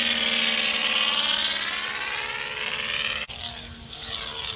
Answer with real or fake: real